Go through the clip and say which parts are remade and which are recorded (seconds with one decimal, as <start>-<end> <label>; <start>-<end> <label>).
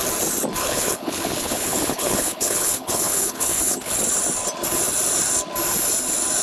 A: 0.0-0.6 recorded; 0.6-3.9 remade; 3.9-6.4 recorded